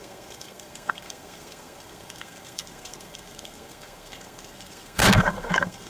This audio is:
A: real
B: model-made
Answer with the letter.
B